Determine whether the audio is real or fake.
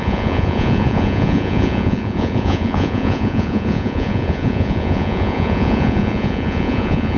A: fake